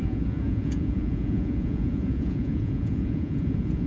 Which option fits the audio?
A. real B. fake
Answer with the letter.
B